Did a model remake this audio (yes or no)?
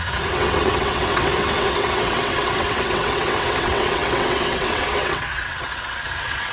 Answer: yes